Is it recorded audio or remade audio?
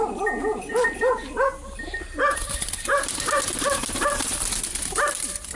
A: recorded